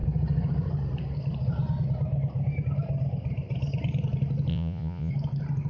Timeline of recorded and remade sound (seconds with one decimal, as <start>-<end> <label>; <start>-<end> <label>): 0.0-4.5 recorded; 4.5-5.1 remade; 5.1-5.7 recorded